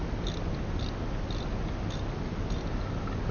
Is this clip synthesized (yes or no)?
no